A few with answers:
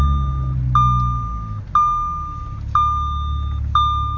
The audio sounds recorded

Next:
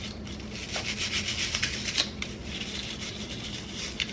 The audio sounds recorded